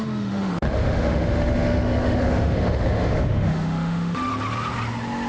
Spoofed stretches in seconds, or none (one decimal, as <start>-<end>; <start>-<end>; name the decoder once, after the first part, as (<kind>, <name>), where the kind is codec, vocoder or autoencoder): 0.0-4.3 (autoencoder, DAC-VAE)